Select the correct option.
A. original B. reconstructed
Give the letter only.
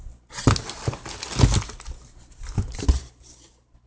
A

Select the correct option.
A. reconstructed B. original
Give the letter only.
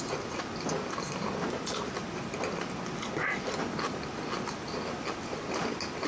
B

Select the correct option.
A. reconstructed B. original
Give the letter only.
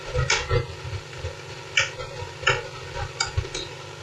B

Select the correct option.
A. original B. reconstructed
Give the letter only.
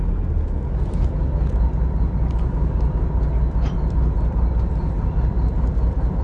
A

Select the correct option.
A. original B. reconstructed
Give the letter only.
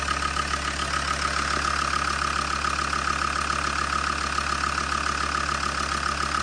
A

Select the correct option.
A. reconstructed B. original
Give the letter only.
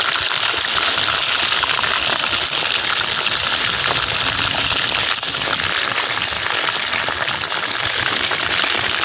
B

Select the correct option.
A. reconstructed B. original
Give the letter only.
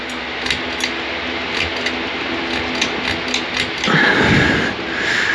B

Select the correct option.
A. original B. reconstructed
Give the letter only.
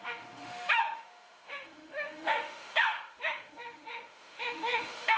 B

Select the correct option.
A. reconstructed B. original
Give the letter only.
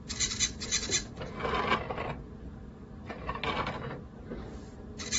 B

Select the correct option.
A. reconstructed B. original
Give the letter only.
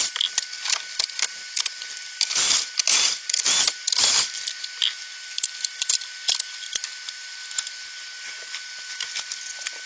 B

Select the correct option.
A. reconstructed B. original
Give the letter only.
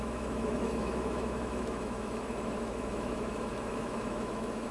A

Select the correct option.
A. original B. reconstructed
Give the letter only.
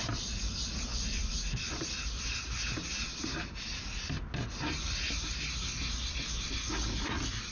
A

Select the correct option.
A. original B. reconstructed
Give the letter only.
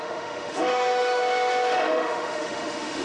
B